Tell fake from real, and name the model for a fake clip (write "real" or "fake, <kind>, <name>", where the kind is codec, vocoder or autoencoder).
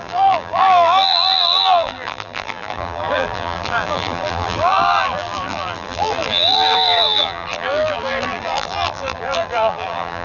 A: fake, vocoder, BigVGAN v2